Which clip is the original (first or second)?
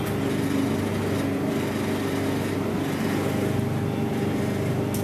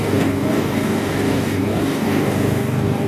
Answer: first